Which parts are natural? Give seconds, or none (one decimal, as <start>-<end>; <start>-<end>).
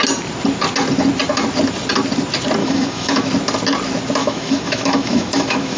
0.0-2.6; 3.3-4.2